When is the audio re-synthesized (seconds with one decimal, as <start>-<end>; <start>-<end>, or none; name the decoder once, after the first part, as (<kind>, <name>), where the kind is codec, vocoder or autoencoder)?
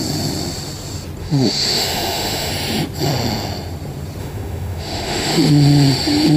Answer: 1.2-2.5 (autoencoder, DAC-VAE); 4.2-5.5